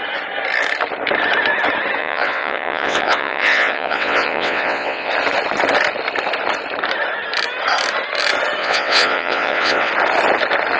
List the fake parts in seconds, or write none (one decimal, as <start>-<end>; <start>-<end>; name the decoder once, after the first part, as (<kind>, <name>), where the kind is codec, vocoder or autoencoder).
2.0-5.1 (vocoder, WaveNeXt); 8.6-9.9

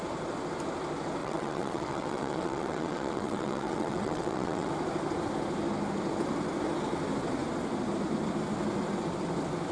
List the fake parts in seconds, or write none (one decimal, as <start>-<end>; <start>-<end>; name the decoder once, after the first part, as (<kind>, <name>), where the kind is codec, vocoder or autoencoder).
1.2-4.7 (vocoder, WaveNeXt)